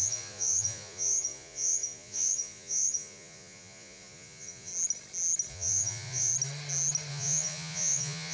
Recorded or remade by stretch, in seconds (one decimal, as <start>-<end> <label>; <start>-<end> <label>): 0.0-4.7 remade; 4.7-5.5 recorded; 5.5-6.3 remade; 6.3-7.1 recorded; 7.1-8.3 remade